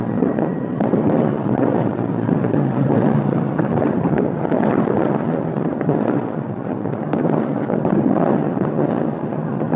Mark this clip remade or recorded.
remade